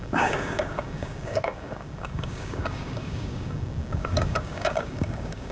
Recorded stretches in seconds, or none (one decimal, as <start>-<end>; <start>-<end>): none